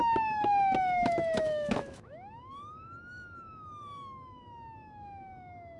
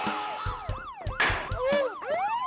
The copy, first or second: first